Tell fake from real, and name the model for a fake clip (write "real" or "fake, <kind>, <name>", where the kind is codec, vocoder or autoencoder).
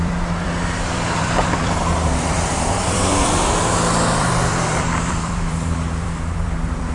fake, vocoder, BigVGAN v2